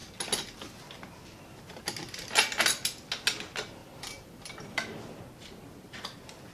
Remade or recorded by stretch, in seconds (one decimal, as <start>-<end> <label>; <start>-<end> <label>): 0.0-3.8 recorded; 3.8-5.1 remade; 5.1-6.5 recorded